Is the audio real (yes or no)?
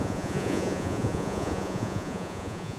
no